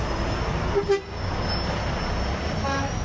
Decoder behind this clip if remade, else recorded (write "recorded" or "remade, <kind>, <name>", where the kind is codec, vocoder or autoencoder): recorded